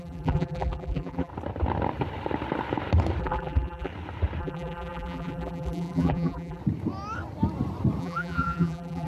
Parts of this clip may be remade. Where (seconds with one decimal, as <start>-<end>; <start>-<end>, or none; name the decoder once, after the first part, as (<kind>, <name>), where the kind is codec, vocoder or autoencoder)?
0.0-1.3 (vocoder, BigVGAN v2); 3.2-3.9; 4.4-6.6; 8.0-9.1